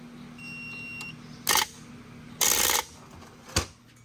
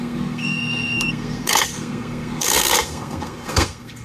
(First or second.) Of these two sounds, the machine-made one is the second